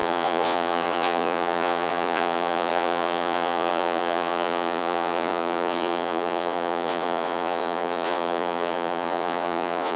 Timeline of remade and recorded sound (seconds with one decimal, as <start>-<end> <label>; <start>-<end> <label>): 0.0-10.0 remade